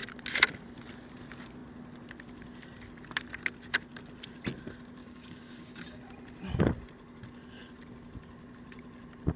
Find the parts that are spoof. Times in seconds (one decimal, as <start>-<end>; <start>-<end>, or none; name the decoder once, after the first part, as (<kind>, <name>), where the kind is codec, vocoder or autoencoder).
5.0-6.0 (codec, DAC)